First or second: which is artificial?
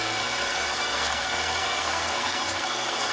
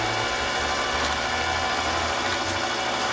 first